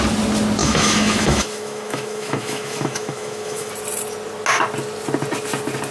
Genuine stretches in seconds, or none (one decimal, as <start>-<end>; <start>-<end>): 0.0-0.6; 3.7-5.9